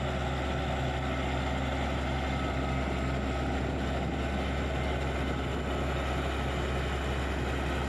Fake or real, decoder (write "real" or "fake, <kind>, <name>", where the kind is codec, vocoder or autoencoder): real